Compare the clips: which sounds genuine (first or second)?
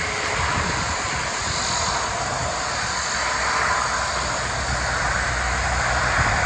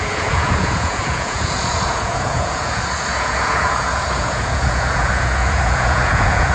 first